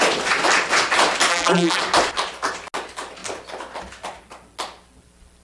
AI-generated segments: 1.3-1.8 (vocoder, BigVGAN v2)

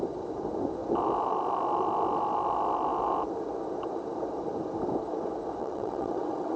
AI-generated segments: 5.6-6.6 (vocoder, WaveNeXt)

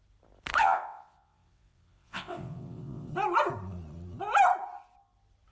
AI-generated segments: 0.6-3.1 (vocoder, WaveNeXt)